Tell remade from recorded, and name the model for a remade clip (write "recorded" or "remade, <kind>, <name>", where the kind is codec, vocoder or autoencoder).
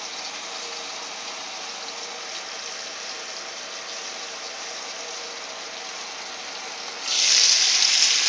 recorded